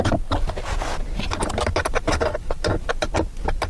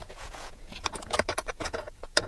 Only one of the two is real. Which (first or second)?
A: first